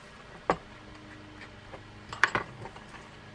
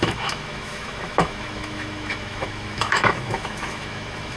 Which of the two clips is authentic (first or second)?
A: first